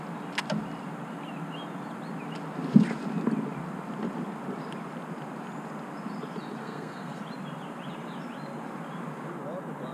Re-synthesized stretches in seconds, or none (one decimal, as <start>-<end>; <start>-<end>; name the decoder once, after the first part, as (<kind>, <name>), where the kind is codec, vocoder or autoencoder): 6.6-7.2 (codec, SNAC)